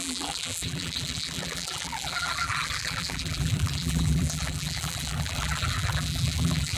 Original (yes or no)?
no